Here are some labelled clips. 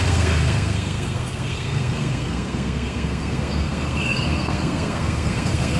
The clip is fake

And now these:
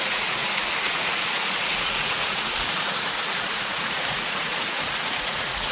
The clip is fake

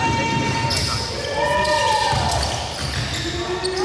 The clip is real